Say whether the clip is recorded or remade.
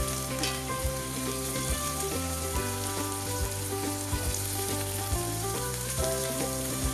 remade